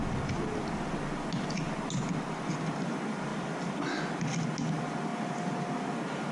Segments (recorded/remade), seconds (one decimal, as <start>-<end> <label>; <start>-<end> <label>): 0.0-6.3 recorded